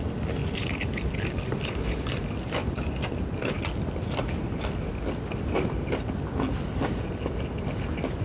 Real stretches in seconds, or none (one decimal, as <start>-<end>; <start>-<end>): 0.0-0.4; 3.1-8.2